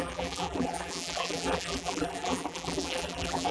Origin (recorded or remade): remade